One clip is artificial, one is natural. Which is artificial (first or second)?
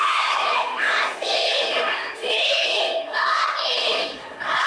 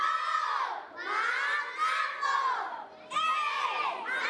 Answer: first